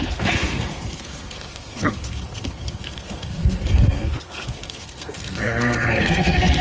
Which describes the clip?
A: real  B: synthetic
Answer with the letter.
B